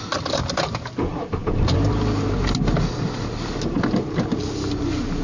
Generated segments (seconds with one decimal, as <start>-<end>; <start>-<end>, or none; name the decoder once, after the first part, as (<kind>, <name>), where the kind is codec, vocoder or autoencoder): none